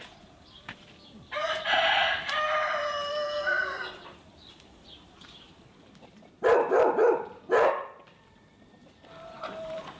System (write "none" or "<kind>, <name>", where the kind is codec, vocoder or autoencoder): vocoder, BigVGAN v2